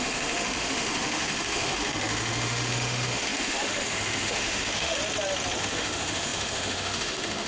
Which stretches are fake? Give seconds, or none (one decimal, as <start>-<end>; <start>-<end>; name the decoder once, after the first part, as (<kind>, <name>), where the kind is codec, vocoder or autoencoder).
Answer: 0.0-5.0 (autoencoder, DAC-VAE); 5.6-7.5